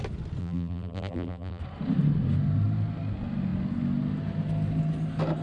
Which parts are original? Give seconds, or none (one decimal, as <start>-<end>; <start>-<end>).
0.0-0.4; 1.6-5.4